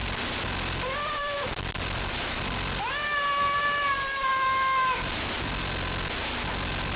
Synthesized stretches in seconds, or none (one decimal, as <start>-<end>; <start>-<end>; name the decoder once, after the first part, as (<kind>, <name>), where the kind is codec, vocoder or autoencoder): 0.0-1.5 (vocoder, BigVGAN v2); 3.6-4.3